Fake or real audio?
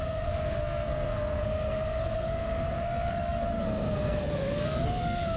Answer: fake